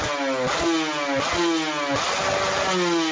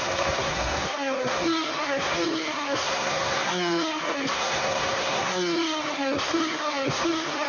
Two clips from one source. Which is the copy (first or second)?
second